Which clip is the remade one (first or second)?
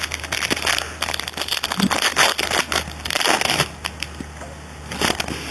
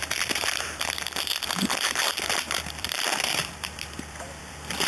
second